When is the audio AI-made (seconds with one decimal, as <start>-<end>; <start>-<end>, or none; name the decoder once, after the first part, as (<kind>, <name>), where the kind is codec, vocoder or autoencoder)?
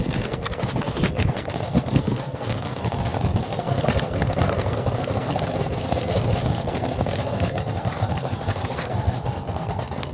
0.0-10.1 (codec, SNAC)